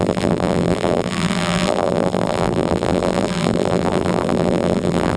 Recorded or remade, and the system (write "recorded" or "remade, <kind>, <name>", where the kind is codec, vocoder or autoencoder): remade, vocoder, BigVGAN v2